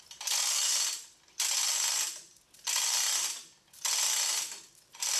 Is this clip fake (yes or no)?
no